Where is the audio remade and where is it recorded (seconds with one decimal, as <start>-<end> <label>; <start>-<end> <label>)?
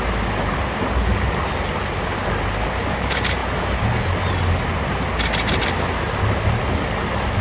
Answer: 0.0-7.4 recorded